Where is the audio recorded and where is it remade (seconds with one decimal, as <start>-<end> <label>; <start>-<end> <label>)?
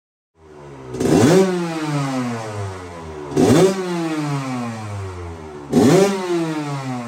0.0-7.1 recorded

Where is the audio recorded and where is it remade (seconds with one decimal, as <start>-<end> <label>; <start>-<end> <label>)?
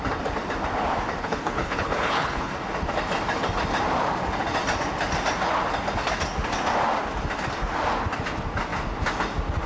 0.0-1.2 recorded; 1.2-2.5 remade; 2.5-9.7 recorded